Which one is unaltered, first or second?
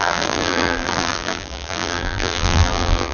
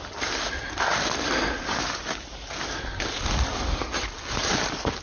second